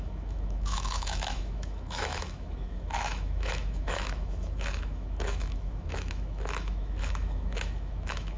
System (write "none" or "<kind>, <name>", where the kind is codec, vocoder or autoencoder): autoencoder, DAC-VAE